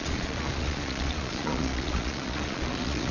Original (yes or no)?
no